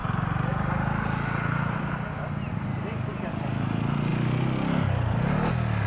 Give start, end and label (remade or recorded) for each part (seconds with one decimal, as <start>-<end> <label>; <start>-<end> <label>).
0.0-5.9 recorded